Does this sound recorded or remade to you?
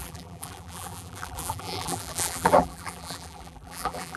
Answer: remade